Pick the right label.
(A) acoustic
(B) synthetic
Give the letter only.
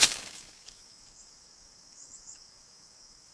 B